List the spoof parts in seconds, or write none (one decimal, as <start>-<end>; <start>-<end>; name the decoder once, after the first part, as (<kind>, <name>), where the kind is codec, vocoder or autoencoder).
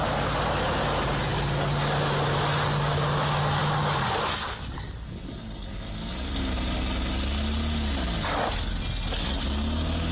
none